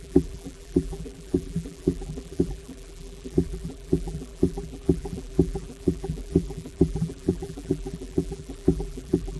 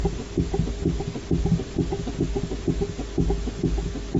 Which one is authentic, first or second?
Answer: second